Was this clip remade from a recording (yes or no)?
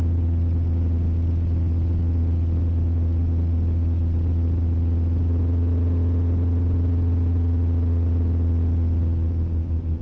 no